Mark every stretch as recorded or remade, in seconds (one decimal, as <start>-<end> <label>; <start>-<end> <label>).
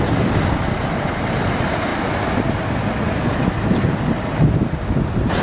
0.0-5.4 recorded